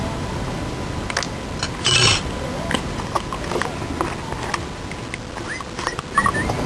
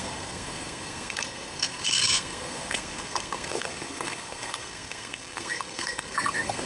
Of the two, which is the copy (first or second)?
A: second